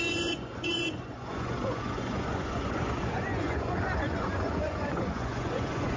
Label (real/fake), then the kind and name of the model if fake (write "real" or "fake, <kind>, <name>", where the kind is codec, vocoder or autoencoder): fake, vocoder, Vocos